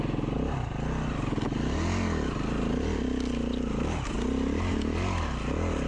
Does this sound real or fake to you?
real